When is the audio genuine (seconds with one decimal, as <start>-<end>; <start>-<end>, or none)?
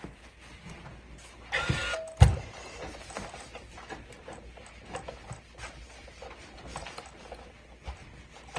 0.0-8.6